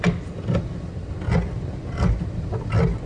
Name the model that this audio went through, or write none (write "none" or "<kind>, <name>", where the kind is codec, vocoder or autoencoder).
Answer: none